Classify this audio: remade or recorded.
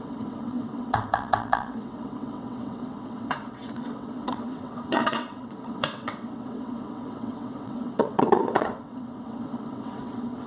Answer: remade